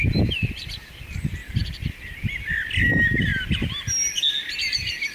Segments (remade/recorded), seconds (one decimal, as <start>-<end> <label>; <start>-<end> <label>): 0.0-1.4 recorded; 1.4-2.5 remade; 2.5-5.1 recorded